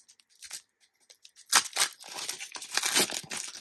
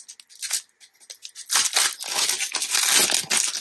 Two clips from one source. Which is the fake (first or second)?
first